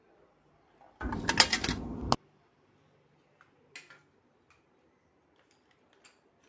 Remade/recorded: recorded